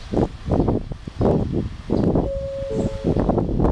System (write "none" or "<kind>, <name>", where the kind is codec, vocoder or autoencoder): none